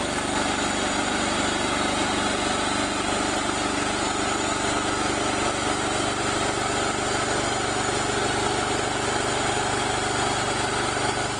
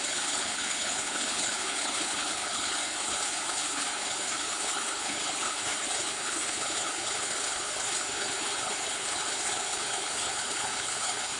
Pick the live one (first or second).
first